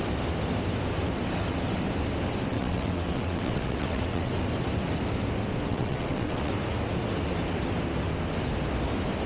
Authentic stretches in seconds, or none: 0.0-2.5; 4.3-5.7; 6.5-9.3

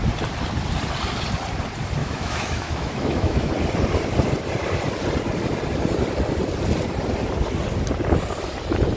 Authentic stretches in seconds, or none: 0.0-2.0; 3.5-9.0

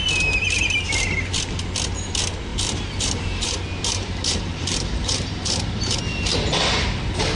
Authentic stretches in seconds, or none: 0.0-2.5; 6.0-7.4

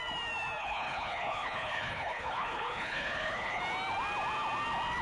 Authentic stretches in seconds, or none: 0.0-0.6; 3.6-5.0

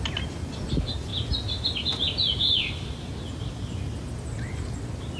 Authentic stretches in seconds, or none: 0.0-5.2

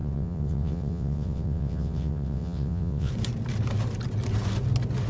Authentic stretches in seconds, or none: 3.1-5.1

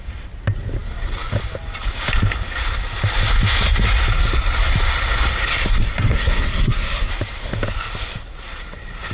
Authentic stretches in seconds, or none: 0.0-5.8; 7.1-9.1

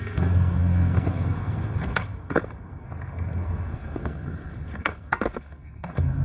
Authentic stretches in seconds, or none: none